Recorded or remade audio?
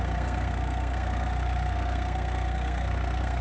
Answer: remade